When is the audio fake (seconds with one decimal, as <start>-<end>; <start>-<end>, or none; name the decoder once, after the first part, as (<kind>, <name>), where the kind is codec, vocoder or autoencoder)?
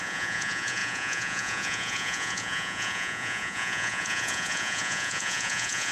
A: 0.0-5.9 (vocoder, Vocos)